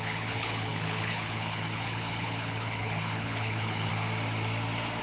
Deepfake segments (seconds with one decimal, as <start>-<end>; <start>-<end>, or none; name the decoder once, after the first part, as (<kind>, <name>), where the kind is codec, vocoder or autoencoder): 0.0-3.9 (codec, HILCodec)